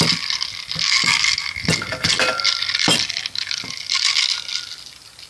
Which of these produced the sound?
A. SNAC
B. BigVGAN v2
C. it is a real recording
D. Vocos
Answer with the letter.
C